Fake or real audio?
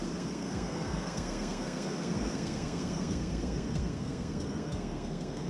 fake